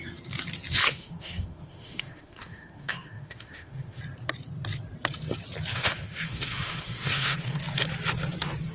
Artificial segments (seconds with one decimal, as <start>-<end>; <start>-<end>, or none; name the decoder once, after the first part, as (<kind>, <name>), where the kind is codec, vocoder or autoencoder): 0.8-4.0 (autoencoder, DAC-VAE); 5.7-7.6